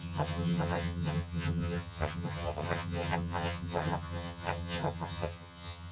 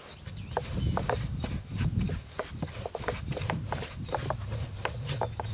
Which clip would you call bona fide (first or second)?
second